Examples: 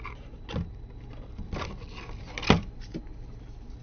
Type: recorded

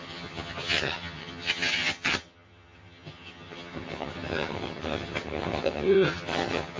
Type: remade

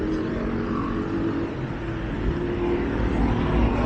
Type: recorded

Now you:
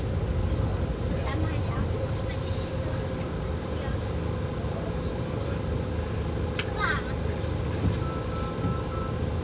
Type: recorded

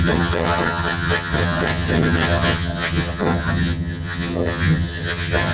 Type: remade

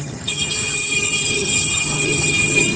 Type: remade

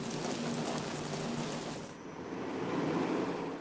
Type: recorded